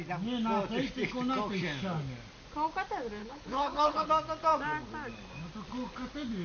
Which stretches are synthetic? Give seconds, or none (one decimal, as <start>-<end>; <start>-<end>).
3.2-4.1